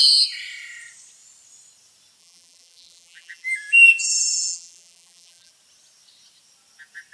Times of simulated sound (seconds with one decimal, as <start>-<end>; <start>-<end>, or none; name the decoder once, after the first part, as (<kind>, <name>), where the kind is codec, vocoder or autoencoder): 2.2-5.5 (vocoder, BigVGAN v2)